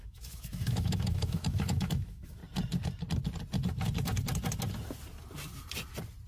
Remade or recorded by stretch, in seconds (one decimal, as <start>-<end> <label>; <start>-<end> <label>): 0.0-2.4 remade; 2.4-6.3 recorded